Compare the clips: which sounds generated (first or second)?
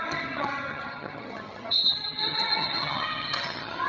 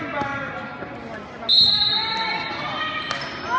first